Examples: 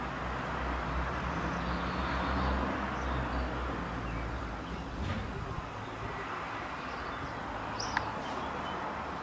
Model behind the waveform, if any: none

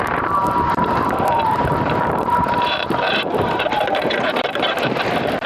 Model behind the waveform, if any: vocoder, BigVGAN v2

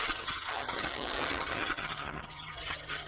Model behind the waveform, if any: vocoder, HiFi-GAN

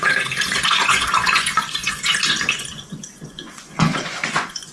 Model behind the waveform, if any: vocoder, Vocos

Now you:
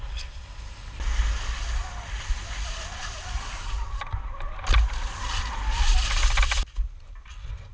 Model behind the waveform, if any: none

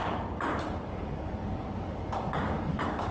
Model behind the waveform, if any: codec, DAC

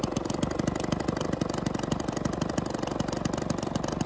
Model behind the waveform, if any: none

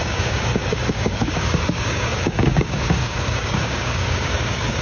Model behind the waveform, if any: codec, DAC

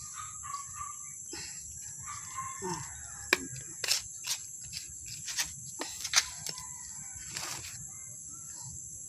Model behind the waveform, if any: none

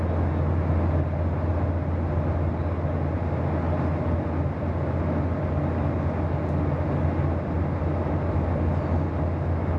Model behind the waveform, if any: none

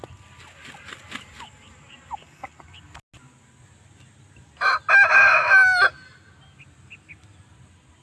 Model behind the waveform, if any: none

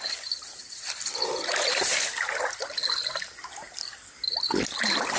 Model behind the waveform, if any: none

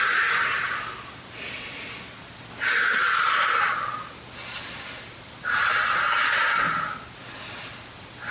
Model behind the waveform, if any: none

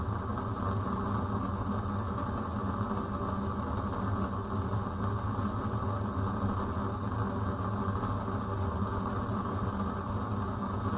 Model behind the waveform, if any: none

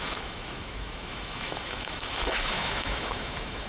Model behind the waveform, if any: autoencoder, DAC-VAE